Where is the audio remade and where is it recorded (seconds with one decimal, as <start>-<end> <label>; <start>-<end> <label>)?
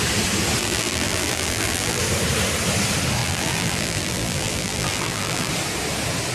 0.0-0.6 recorded; 0.6-2.0 remade; 2.0-3.2 recorded; 3.2-5.5 remade; 5.5-6.3 recorded